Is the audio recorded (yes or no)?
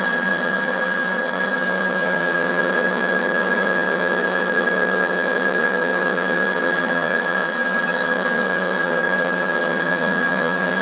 no